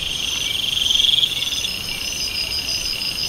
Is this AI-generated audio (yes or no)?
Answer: no